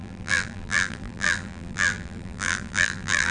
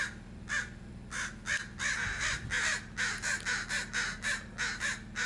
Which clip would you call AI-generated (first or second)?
first